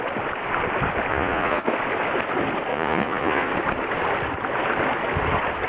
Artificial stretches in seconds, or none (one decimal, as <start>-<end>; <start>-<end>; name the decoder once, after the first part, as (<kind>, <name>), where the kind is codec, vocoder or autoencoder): 1.1-1.6 (vocoder, Vocos); 2.7-3.5

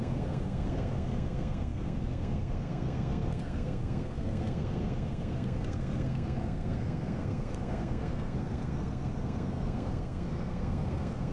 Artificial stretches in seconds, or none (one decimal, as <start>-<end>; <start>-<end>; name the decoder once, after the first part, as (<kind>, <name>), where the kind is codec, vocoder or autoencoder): 0.0-11.3 (codec, SNAC)

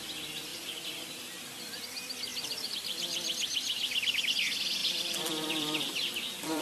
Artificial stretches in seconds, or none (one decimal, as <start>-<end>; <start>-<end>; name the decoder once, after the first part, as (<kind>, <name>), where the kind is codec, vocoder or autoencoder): 0.5-1.8 (vocoder, BigVGAN v2); 2.3-4.2; 4.8-6.6

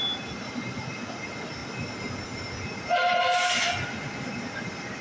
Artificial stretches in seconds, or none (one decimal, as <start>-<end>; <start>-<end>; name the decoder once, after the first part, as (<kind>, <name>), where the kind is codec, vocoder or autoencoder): none

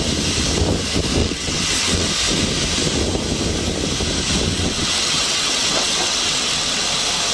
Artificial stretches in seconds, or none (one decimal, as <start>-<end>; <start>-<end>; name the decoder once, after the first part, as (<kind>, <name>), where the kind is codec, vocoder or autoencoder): 1.2-2.1 (vocoder, WaveNeXt); 4.5-6.8